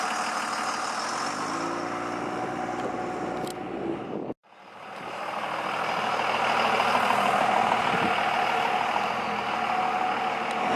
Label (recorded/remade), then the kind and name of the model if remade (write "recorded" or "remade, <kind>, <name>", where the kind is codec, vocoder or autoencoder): recorded